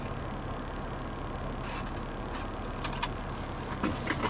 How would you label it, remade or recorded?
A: recorded